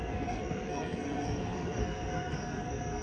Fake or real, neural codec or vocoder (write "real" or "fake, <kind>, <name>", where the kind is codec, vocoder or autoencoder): fake, codec, SNAC